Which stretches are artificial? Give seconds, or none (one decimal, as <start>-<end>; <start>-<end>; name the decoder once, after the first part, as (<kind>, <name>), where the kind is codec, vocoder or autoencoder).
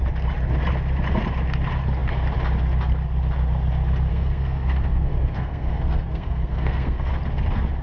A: 4.1-7.1 (codec, SNAC)